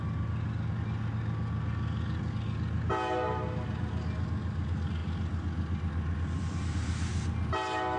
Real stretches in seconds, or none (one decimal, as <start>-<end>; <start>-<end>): 0.0-8.0